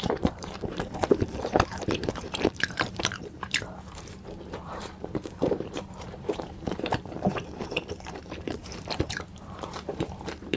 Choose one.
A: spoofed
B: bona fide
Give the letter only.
A